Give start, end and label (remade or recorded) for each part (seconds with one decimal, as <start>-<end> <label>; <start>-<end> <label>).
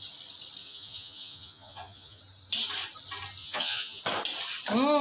0.0-0.6 recorded; 0.6-2.2 remade; 2.2-3.4 recorded; 3.4-4.0 remade; 4.0-5.0 recorded